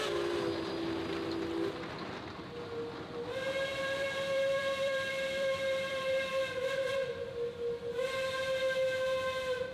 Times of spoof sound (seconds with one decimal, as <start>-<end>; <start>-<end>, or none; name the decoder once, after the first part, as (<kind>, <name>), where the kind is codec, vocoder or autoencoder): 3.7-7.2 (vocoder, BigVGAN v2)